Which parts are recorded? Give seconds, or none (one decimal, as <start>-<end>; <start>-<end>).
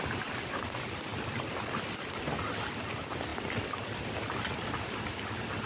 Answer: 0.0-5.7